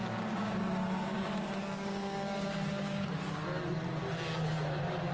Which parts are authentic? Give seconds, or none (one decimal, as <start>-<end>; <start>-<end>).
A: 3.1-5.1